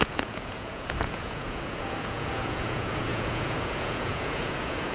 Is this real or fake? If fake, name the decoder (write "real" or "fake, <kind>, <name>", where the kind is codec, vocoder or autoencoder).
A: fake, vocoder, Vocos